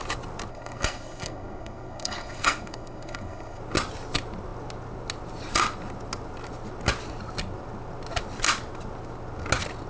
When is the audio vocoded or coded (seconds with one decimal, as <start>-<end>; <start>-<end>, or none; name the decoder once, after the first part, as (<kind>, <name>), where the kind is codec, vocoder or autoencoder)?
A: 0.5-3.6 (codec, SNAC)